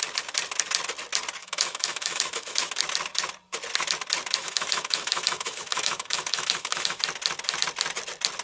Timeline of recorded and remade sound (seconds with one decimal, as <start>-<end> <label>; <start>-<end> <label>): 0.0-1.4 recorded; 1.4-2.8 remade; 2.8-4.4 recorded; 4.4-7.0 remade; 7.0-8.4 recorded